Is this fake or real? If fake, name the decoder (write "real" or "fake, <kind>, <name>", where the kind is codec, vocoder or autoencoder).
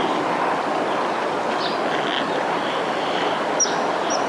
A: real